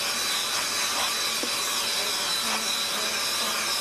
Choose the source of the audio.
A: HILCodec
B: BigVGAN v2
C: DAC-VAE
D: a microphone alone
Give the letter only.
D